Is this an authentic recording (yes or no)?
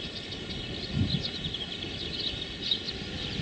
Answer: yes